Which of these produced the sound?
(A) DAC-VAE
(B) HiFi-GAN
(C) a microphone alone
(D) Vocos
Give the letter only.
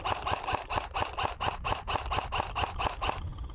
C